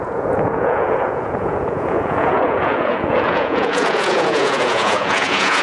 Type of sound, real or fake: fake